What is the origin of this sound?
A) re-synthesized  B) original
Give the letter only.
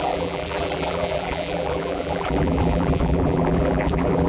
A